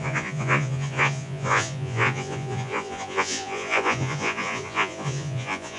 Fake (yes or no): yes